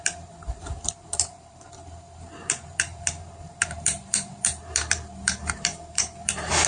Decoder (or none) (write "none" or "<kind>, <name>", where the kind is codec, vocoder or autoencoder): vocoder, BigVGAN v2